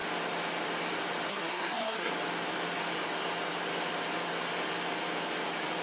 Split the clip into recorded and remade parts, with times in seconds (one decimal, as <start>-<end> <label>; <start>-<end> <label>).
0.0-1.3 recorded; 1.3-2.1 remade; 2.1-5.8 recorded